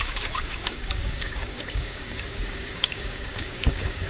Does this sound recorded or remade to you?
remade